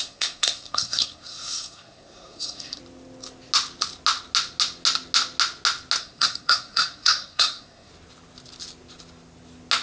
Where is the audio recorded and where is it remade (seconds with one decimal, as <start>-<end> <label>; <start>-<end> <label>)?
0.0-2.8 remade; 2.8-6.0 recorded; 6.0-7.9 remade; 7.9-9.8 recorded